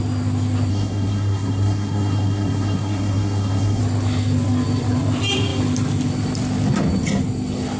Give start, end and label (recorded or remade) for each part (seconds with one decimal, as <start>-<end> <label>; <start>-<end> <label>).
0.0-0.7 recorded; 0.7-3.8 remade; 3.8-7.8 recorded